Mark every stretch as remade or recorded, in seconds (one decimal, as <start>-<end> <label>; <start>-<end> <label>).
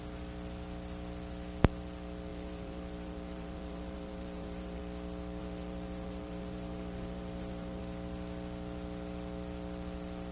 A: 0.0-2.3 recorded; 2.3-4.8 remade; 4.8-5.4 recorded; 5.4-7.8 remade; 7.8-10.3 recorded